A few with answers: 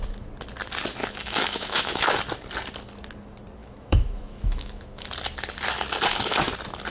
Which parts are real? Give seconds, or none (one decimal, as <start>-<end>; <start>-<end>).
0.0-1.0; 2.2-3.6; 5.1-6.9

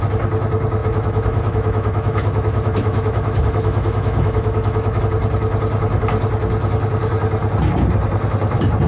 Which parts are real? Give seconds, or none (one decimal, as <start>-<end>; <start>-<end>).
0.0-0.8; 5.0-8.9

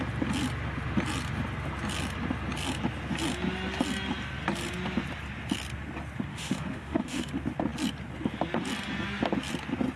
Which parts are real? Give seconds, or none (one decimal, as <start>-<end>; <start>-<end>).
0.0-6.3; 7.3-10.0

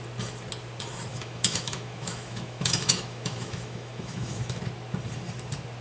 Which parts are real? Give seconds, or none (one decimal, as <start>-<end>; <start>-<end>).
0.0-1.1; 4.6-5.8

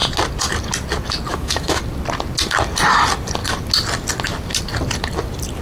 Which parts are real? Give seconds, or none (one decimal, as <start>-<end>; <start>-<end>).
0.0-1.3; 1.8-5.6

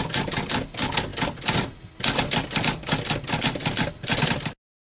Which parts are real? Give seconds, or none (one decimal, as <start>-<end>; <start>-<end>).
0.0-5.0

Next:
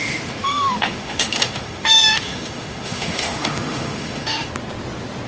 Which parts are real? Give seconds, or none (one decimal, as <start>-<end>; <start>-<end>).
4.5-5.3

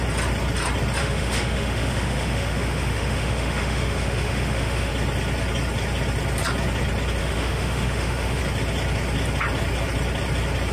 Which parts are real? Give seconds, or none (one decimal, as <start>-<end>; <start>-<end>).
0.0-1.0; 4.9-7.2; 8.4-10.7